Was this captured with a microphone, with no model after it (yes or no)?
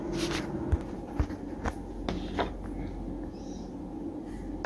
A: yes